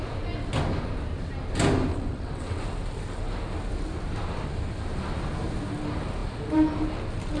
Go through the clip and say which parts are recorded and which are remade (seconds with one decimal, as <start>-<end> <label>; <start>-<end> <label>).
0.0-1.9 recorded; 1.9-2.6 remade; 2.6-7.4 recorded